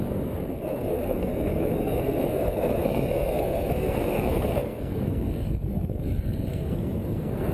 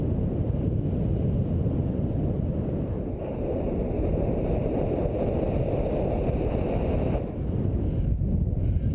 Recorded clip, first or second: second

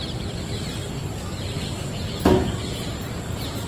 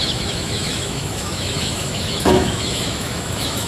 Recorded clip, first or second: first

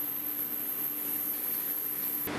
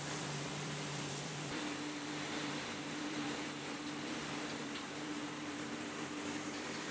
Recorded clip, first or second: first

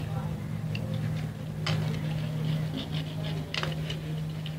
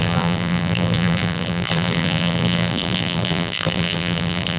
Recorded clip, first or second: first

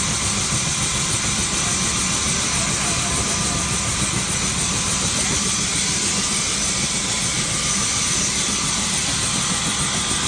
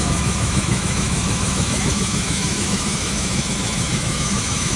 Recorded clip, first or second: first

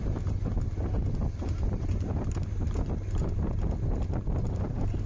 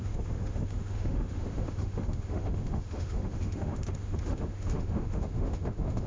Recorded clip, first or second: first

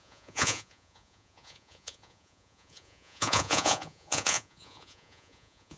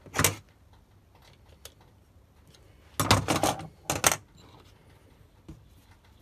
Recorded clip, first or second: second